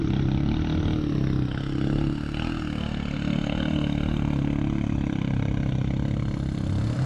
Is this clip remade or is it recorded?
recorded